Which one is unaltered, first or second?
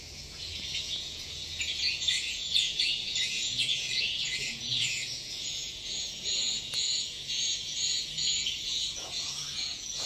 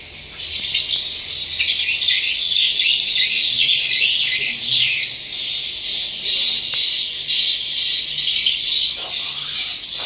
second